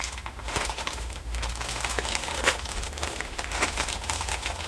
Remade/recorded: remade